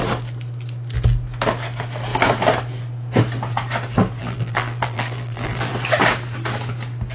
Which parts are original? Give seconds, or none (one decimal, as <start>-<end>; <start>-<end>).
0.0-4.2; 5.7-7.1